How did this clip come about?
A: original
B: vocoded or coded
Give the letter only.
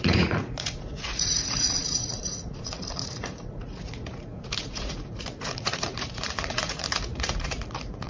B